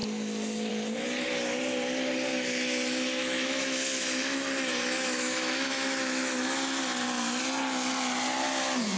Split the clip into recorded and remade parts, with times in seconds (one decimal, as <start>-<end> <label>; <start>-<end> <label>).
0.0-2.3 recorded; 2.3-6.8 remade; 6.8-9.0 recorded

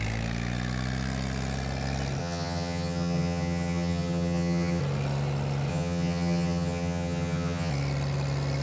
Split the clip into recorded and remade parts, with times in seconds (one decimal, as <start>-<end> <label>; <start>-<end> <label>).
0.0-2.2 recorded; 2.2-4.8 remade; 4.8-5.7 recorded; 5.7-7.7 remade; 7.7-8.6 recorded

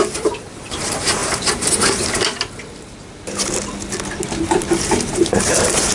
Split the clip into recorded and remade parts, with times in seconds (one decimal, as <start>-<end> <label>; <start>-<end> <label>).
0.0-1.2 remade; 1.2-4.7 recorded; 4.7-5.9 remade

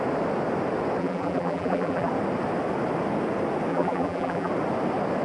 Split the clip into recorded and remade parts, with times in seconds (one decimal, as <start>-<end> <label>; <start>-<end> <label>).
0.0-1.0 recorded; 1.0-2.1 remade; 2.1-3.7 recorded; 3.7-4.5 remade; 4.5-5.2 recorded

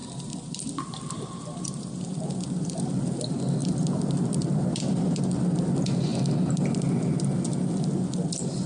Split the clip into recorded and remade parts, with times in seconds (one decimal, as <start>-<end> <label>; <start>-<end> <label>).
0.0-1.8 remade; 1.8-3.6 recorded; 3.6-5.6 remade; 5.6-8.7 recorded